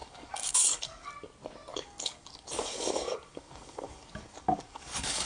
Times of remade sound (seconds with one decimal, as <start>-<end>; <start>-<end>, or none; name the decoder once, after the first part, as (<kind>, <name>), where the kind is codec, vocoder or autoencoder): 0.0-1.1 (codec, DAC); 1.7-5.3